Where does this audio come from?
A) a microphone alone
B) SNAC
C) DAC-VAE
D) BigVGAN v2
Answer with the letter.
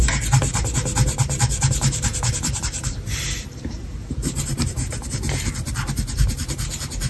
D